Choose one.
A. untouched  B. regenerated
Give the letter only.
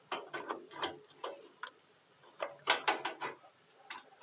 A